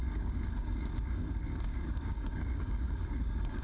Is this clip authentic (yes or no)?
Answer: no